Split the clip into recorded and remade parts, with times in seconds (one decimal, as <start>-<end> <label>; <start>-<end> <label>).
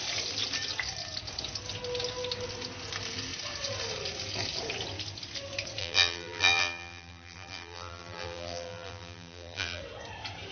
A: 0.0-5.8 recorded; 5.8-9.8 remade; 9.8-10.5 recorded